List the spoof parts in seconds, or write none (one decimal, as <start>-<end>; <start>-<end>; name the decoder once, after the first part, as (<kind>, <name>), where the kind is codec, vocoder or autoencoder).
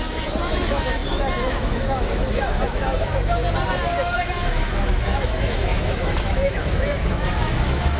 0.0-3.4 (autoencoder, DAC-VAE); 4.0-8.0